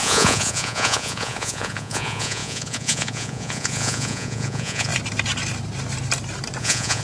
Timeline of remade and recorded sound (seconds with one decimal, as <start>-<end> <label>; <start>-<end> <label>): 0.0-4.9 remade; 4.9-6.6 recorded; 6.6-7.0 remade